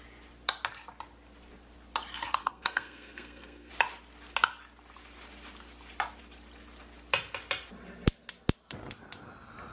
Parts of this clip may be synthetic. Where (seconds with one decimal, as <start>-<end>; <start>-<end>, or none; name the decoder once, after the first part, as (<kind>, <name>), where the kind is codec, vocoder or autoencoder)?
2.4-3.7 (codec, SNAC)